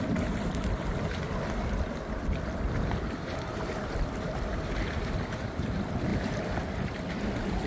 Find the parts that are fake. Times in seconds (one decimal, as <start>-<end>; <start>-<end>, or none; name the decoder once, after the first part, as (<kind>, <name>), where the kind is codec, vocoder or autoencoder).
0.0-7.7 (vocoder, BigVGAN v2)